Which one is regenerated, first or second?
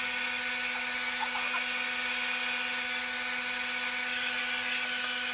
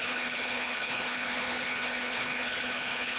second